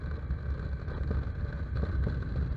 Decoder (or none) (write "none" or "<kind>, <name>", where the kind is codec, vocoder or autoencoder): none